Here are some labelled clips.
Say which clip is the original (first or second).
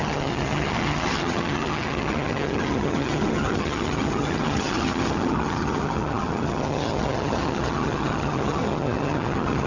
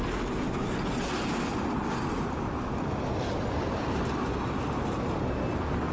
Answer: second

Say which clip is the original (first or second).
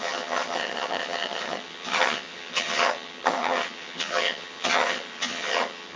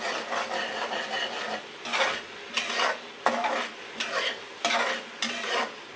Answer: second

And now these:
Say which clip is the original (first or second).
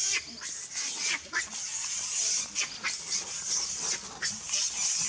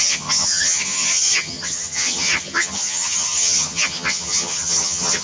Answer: first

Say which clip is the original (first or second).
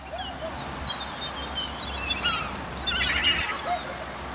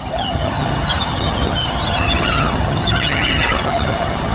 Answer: first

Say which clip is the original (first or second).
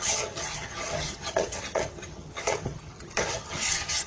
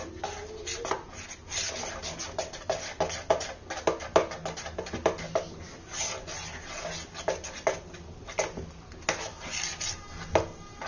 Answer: second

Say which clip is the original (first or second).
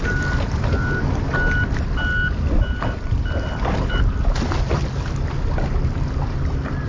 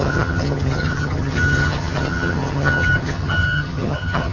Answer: first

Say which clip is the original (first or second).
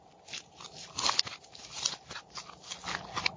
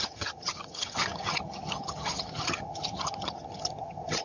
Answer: first